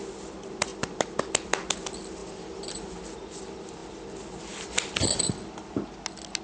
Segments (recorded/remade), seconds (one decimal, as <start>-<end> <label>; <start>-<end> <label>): 0.0-0.7 recorded; 0.7-1.2 remade; 1.2-2.2 recorded; 2.2-2.9 remade; 2.9-6.4 recorded